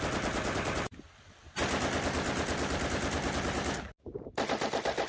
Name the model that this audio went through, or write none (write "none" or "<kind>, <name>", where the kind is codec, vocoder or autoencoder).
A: none